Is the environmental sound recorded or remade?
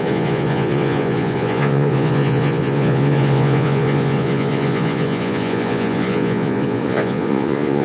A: remade